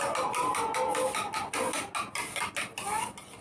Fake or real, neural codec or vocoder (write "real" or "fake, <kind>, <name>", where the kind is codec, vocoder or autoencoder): real